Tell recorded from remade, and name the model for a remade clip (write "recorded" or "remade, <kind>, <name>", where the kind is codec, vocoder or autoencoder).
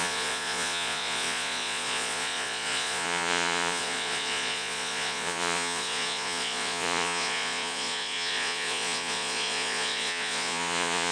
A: remade, vocoder, Vocos